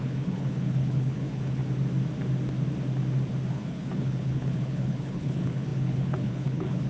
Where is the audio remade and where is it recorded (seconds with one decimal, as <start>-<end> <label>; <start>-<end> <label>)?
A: 0.0-1.6 remade; 1.6-3.5 recorded; 3.5-6.9 remade